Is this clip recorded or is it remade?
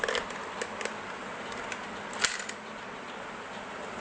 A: recorded